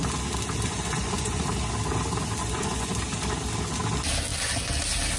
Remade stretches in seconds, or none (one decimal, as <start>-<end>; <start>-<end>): 0.7-1.4; 2.4-2.9